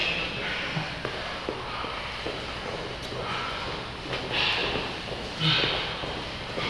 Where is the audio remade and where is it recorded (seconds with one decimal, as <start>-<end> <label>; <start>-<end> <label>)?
0.0-3.0 recorded; 3.0-3.7 remade; 3.7-6.7 recorded

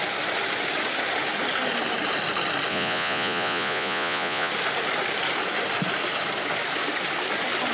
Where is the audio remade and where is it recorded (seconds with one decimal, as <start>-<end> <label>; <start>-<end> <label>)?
0.0-2.7 recorded; 2.7-4.5 remade; 4.5-7.7 recorded